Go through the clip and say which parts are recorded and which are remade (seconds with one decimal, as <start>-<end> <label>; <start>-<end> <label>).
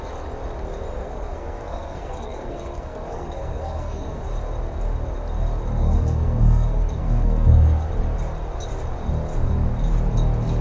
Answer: 0.0-1.0 recorded; 1.0-4.2 remade; 4.2-5.8 recorded; 5.8-7.9 remade; 7.9-10.6 recorded